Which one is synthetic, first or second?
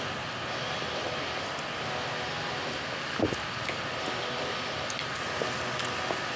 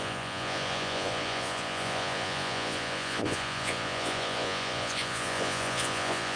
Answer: second